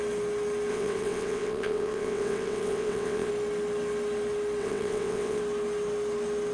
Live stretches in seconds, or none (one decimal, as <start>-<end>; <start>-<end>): 0.0-0.7; 3.3-4.6; 5.4-6.5